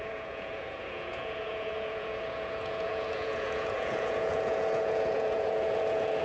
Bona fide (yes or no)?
no